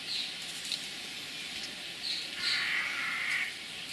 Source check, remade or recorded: recorded